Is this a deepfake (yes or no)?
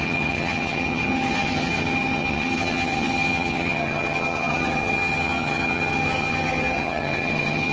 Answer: yes